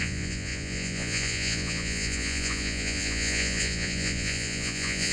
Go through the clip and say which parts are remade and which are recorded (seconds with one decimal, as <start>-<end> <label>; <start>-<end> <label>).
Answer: 0.0-5.1 remade